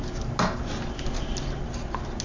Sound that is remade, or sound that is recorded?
recorded